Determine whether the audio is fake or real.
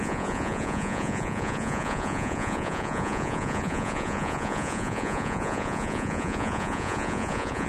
fake